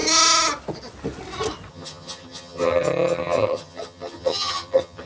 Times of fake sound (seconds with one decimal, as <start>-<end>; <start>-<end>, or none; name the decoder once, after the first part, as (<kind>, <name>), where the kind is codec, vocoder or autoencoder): 1.7-5.1 (vocoder, HiFi-GAN)